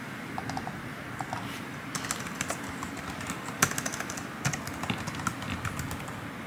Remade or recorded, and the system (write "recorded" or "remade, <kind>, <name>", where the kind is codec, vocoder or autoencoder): recorded